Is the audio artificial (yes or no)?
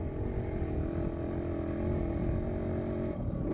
no